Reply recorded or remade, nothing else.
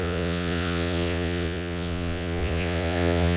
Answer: remade